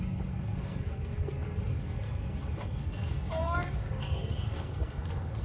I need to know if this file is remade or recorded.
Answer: remade